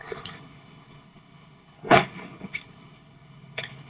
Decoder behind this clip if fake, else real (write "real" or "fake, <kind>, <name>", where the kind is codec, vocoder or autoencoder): fake, codec, HILCodec